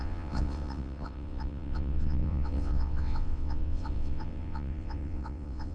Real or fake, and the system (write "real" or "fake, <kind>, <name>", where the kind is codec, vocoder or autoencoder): fake, vocoder, WaveNeXt